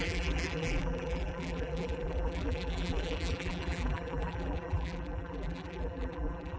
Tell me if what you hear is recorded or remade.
remade